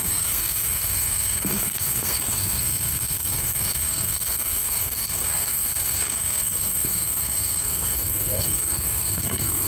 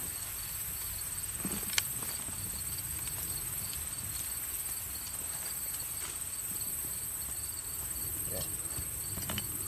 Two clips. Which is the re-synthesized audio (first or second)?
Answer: first